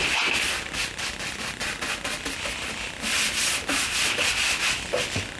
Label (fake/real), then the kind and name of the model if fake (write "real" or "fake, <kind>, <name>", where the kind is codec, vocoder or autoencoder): real